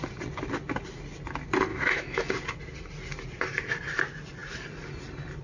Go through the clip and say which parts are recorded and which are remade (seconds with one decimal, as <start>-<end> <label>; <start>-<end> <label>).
0.0-1.7 recorded; 1.7-2.3 remade; 2.3-5.4 recorded